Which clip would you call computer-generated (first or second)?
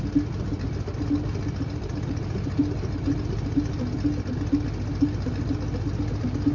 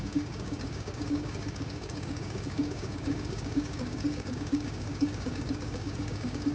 second